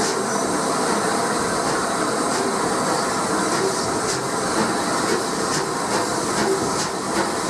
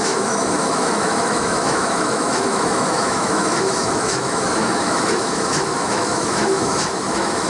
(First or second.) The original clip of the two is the first